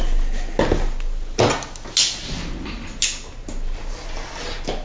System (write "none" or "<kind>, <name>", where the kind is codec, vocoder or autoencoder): none